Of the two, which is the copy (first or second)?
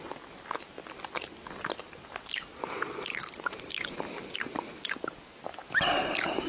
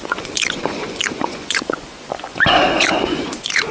second